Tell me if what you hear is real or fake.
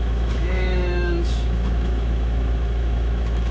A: fake